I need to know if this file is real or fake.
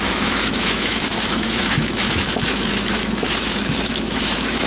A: fake